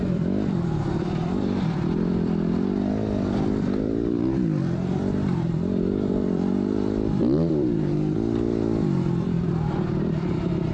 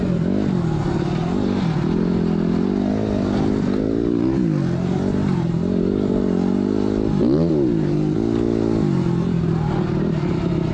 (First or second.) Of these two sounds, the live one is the second